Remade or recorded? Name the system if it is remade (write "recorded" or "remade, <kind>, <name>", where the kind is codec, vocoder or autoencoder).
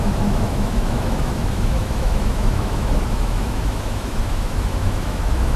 remade, autoencoder, DAC-VAE